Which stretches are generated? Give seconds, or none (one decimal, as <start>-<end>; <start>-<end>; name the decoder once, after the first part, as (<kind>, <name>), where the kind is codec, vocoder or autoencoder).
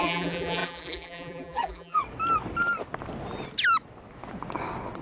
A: 0.0-2.0 (vocoder, BigVGAN v2)